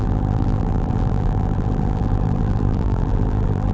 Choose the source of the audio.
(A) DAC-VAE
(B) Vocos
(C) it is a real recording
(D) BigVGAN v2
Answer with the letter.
D